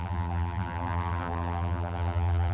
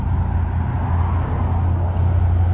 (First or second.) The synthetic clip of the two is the first